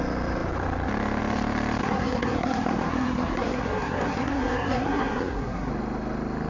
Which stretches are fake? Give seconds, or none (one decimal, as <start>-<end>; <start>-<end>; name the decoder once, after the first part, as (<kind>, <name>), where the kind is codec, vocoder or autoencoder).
1.8-5.7 (codec, SNAC)